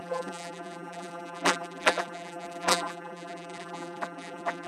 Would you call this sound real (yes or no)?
no